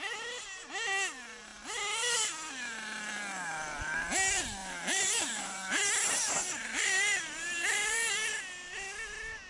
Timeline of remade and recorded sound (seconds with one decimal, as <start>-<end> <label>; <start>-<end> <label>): 0.0-4.6 recorded; 4.6-8.3 remade; 8.3-9.5 recorded